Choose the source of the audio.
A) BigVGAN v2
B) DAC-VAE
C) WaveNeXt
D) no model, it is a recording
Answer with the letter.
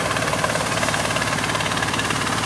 A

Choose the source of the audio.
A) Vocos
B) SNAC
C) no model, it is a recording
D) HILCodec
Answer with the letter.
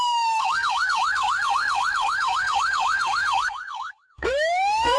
B